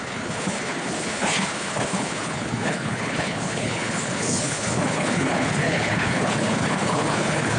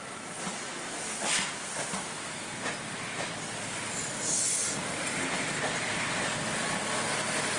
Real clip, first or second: second